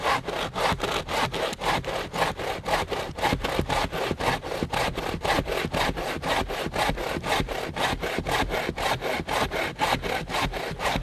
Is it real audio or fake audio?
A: real